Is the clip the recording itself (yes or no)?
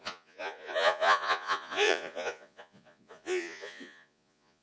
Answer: no